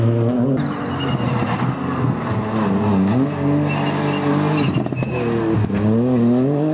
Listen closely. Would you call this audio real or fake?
real